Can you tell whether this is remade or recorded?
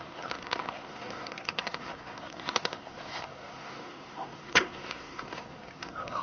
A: remade